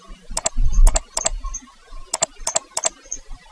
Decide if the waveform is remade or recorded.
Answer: recorded